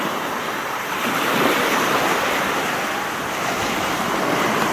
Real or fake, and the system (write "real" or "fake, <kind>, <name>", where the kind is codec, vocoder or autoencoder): real